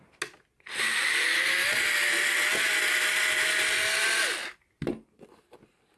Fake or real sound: real